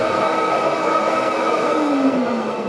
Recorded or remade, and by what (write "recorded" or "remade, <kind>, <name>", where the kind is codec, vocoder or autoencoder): remade, codec, SNAC